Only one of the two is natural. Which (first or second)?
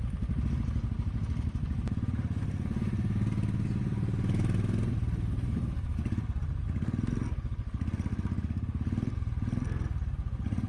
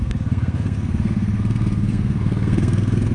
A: first